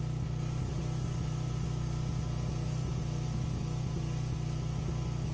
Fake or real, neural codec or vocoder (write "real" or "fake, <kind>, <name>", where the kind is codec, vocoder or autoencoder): real